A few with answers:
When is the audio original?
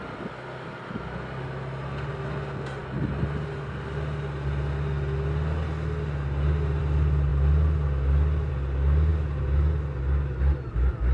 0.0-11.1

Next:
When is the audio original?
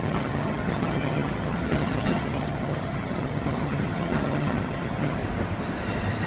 5.2-6.3